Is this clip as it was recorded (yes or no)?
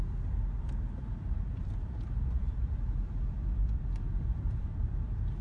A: no